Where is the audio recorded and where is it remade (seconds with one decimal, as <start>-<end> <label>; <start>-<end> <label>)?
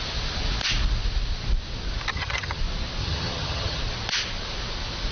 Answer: 0.0-2.1 recorded; 2.1-2.6 remade; 2.6-3.0 recorded; 3.0-3.8 remade; 3.8-5.1 recorded